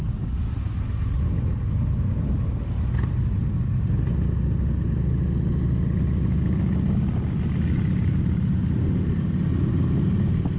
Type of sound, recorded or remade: recorded